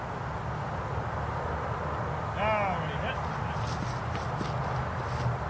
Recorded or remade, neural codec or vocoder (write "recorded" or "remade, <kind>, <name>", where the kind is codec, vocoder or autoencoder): recorded